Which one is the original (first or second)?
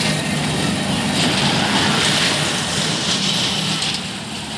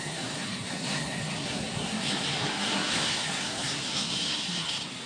first